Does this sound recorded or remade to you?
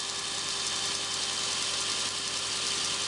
recorded